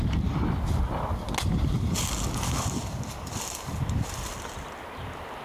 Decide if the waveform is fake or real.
real